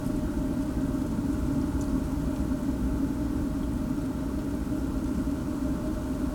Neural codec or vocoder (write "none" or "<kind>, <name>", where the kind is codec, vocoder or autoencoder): none